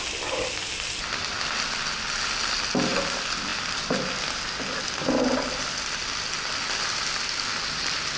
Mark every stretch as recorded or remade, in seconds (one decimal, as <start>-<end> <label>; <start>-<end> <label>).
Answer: 0.0-8.2 recorded